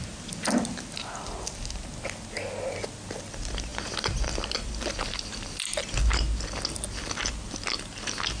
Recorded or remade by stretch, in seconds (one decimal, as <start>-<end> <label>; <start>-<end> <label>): 0.0-8.4 recorded